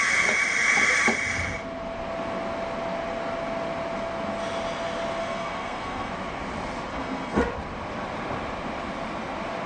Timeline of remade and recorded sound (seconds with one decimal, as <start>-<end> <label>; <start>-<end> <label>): 0.0-5.2 recorded; 5.2-6.1 remade; 6.1-6.9 recorded; 6.9-7.4 remade; 7.4-9.7 recorded